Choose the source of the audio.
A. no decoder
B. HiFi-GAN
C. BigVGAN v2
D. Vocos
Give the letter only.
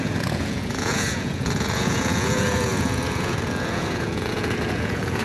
D